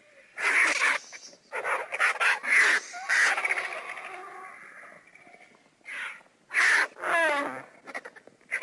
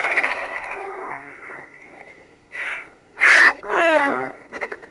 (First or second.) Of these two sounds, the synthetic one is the second